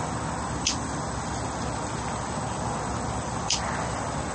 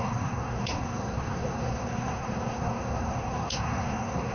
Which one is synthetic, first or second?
second